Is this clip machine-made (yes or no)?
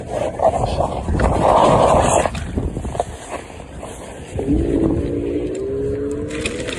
no